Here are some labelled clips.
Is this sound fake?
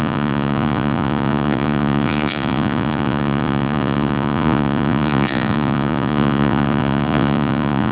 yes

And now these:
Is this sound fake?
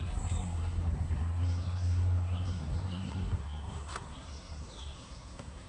yes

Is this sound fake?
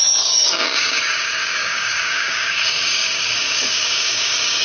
yes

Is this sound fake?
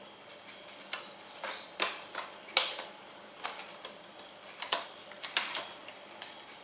no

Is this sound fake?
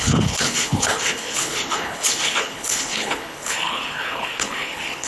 yes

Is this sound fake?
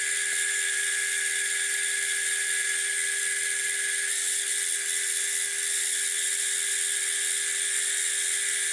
no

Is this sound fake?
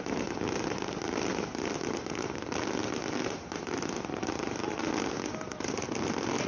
no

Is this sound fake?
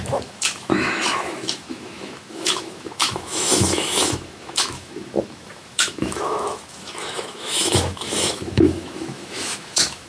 yes